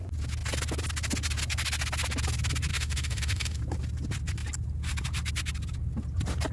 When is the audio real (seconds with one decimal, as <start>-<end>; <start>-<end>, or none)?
0.0-2.7; 3.6-6.5